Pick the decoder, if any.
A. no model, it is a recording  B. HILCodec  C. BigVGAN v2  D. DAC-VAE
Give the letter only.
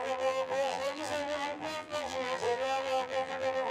C